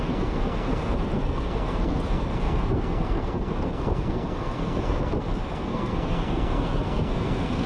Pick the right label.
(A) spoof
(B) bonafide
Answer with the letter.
A